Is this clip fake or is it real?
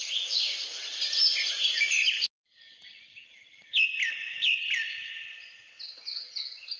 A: real